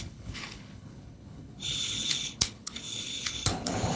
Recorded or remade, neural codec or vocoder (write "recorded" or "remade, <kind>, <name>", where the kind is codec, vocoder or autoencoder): remade, codec, HILCodec